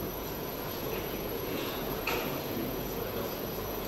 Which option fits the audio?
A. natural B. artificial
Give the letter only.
B